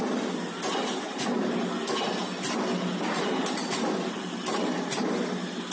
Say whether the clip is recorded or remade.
recorded